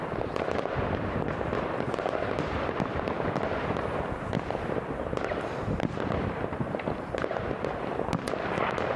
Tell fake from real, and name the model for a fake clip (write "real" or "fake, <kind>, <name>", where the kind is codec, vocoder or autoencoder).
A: fake, vocoder, BigVGAN v2